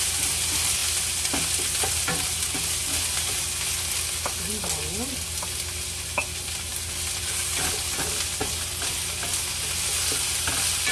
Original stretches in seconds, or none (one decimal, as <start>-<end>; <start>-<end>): 0.0-10.9